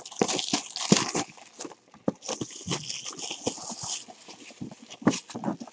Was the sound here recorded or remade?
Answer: recorded